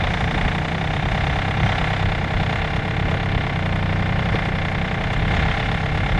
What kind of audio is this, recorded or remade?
recorded